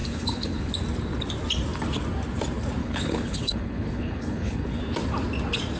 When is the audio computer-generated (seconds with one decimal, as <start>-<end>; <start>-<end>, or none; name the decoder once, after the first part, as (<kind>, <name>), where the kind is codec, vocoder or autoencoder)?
0.0-0.7 (codec, HILCodec); 2.8-4.8